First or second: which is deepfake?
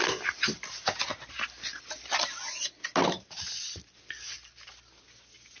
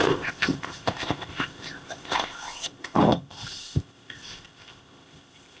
second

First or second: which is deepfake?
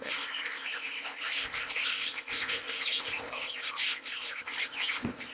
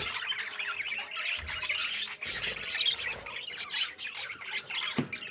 first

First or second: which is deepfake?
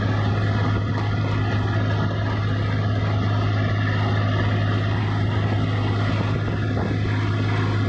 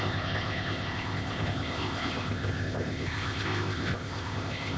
second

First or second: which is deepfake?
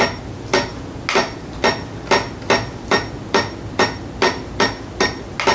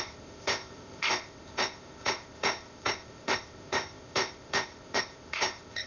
second